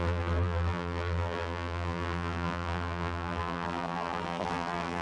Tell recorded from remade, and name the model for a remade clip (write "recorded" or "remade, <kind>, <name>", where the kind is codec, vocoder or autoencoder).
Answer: remade, vocoder, BigVGAN v2